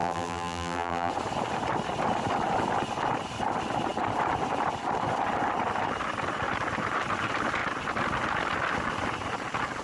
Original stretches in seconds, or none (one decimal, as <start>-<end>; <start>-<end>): 1.1-9.8